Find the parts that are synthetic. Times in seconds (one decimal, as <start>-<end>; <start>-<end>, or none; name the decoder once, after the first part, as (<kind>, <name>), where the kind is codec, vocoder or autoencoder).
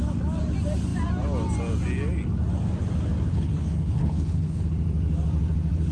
3.3-4.7 (codec, HILCodec)